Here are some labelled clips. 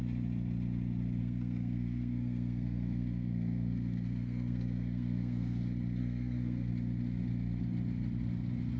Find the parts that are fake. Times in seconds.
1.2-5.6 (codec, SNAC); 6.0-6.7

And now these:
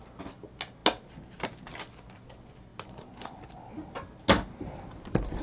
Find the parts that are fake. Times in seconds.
none

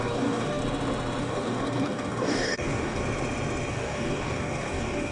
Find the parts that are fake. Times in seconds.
0.0-0.6 (codec, DAC); 1.2-3.0; 3.7-5.1

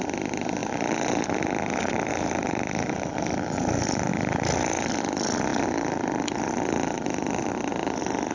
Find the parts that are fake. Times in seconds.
none

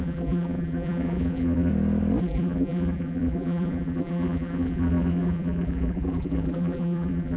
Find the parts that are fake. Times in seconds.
0.0-1.7 (vocoder, BigVGAN v2); 2.2-7.4

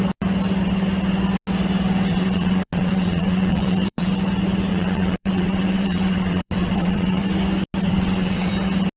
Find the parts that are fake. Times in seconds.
2.1-4.1 (vocoder, WaveNeXt); 4.7-7.2; 7.9-8.5

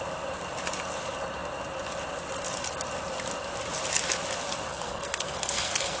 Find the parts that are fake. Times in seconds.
4.7-6.0 (codec, SNAC)

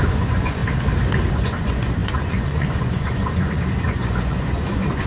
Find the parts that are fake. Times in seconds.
0.0-0.6 (vocoder, Vocos); 1.3-5.1